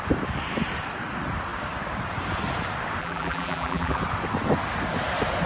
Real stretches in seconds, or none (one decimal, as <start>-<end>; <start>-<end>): 0.0-3.0; 4.0-5.5